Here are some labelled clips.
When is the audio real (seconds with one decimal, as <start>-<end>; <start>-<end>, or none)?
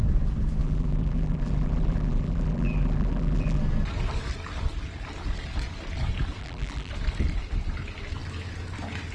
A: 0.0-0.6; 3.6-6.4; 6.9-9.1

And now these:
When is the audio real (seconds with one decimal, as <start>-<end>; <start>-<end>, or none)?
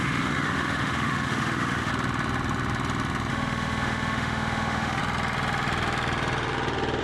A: 1.9-3.3; 5.0-7.0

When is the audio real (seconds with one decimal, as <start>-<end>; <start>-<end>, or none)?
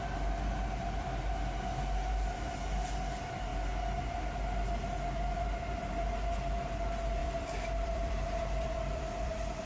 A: 0.0-7.2